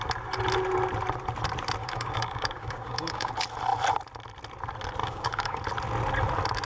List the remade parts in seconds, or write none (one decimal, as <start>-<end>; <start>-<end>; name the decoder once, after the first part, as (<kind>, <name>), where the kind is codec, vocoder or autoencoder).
1.8-3.3 (codec, DAC); 5.0-5.6